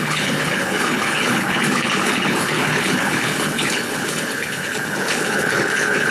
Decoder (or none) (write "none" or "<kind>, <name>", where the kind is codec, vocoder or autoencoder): codec, HILCodec